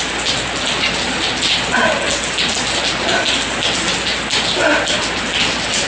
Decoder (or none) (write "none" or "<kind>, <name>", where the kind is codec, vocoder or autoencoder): none